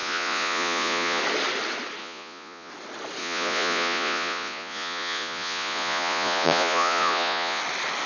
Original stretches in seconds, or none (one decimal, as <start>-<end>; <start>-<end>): 1.2-2.0; 2.7-3.2; 7.6-8.1